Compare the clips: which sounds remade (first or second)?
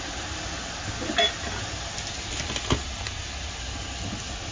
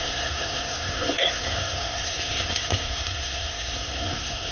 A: second